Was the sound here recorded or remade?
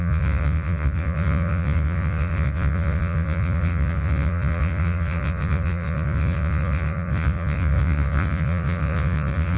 remade